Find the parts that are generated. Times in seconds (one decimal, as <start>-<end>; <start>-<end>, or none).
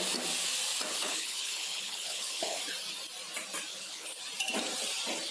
0.9-2.6; 3.7-4.2